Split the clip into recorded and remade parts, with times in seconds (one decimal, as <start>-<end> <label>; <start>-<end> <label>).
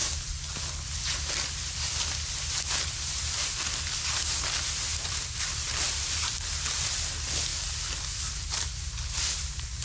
0.0-4.9 recorded; 4.9-7.1 remade; 7.1-9.8 recorded